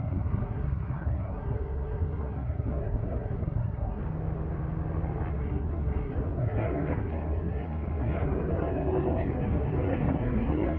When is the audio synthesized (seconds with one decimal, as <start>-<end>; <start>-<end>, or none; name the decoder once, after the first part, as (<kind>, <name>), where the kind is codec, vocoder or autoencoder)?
0.0-4.0 (codec, SNAC); 5.3-10.8